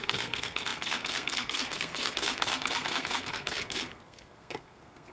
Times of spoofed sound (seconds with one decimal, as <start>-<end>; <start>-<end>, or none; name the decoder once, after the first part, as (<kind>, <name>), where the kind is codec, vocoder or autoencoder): 0.0-5.1 (codec, SNAC)